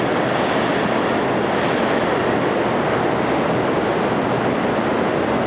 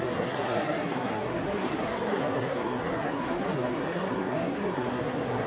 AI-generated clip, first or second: second